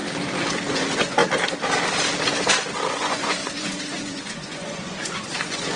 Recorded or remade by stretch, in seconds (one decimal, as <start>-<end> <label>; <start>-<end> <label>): 0.0-0.7 recorded; 0.7-1.2 remade; 1.2-2.9 recorded; 2.9-5.8 remade